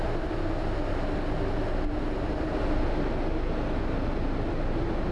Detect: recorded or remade recorded